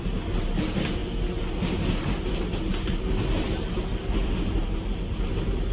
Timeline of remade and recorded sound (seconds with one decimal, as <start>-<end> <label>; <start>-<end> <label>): 0.0-5.7 recorded